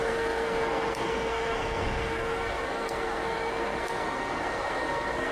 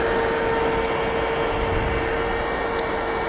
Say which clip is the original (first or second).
second